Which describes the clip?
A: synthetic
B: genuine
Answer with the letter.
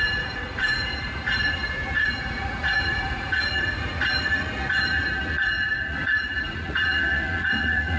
A